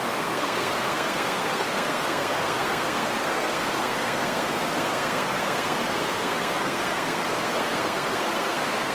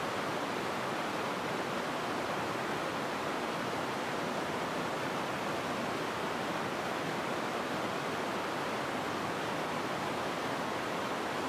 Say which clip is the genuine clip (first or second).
second